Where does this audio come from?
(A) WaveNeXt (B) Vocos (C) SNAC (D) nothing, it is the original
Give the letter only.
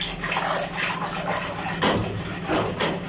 D